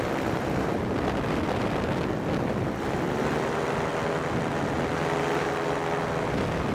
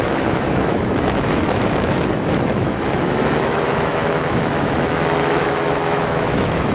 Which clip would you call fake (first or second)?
second